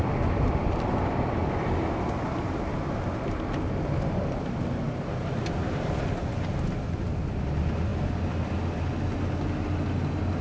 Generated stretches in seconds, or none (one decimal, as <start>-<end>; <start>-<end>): none